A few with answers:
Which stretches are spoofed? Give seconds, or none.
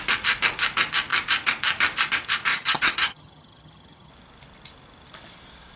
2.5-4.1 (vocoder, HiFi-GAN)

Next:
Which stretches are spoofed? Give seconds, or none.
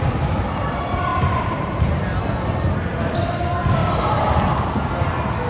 1.1-2.2 (vocoder, BigVGAN v2); 3.8-4.3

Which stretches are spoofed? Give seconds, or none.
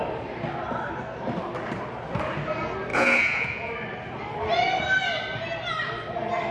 2.9-3.7 (vocoder, Vocos)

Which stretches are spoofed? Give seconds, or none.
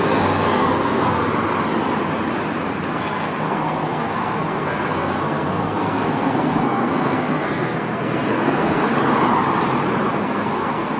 0.0-1.2 (codec, SNAC); 2.9-8.9; 10.2-11.0